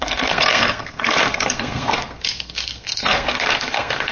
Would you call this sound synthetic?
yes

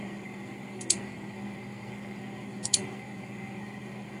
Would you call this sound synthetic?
yes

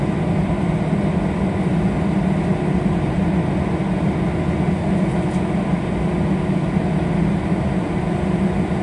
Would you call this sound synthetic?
no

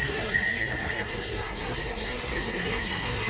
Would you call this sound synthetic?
yes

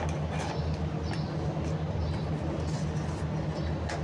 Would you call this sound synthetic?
no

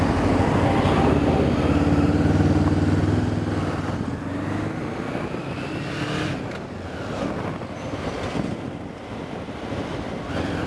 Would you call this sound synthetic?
no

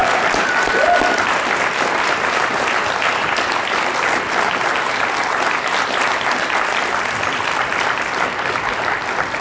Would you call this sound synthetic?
no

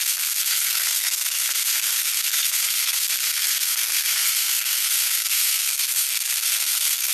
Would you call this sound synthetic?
yes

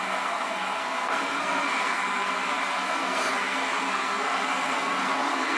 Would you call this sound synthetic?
yes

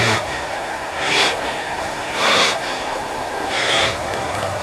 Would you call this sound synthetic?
yes